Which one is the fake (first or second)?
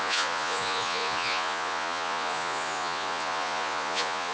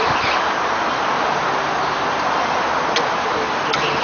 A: first